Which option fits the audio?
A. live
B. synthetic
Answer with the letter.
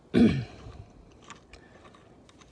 A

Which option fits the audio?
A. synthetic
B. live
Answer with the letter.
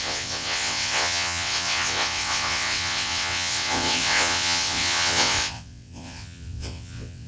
A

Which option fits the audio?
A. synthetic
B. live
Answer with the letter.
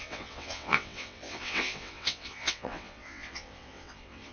A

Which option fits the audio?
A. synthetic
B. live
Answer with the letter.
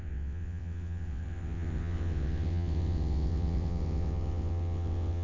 A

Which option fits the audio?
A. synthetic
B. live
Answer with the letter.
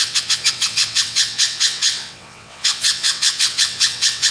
A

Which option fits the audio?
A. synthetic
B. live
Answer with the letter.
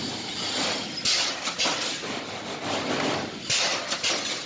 B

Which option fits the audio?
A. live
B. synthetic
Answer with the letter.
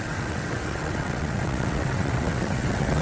B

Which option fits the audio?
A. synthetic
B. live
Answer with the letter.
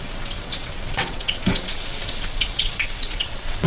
A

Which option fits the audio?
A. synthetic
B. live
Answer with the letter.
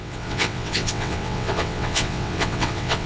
A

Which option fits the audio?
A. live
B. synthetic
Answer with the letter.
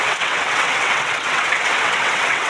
B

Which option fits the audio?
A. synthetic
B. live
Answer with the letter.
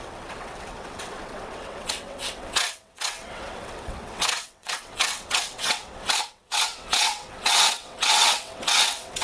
A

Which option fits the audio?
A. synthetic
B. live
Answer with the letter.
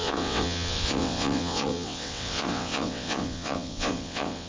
A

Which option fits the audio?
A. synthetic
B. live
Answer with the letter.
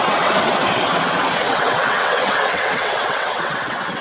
A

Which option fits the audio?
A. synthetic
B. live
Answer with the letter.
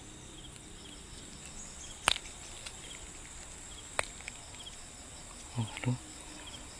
B